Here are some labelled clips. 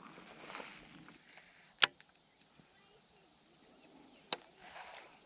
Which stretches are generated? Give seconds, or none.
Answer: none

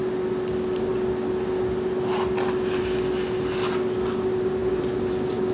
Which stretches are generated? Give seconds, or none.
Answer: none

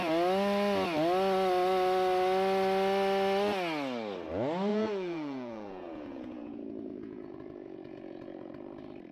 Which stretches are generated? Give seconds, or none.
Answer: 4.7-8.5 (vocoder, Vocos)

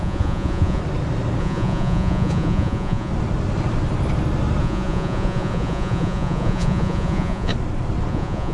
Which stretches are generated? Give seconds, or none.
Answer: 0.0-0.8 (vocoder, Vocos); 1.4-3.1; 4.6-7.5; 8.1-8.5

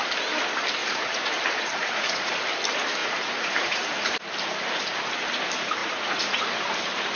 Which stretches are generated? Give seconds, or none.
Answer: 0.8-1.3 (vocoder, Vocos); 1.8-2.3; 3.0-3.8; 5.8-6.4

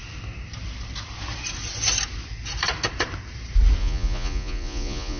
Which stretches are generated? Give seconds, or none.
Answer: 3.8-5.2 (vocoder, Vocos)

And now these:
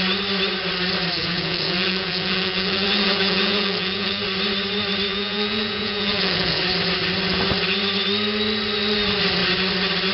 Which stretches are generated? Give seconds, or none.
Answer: 1.2-4.2 (vocoder, Vocos); 5.1-6.6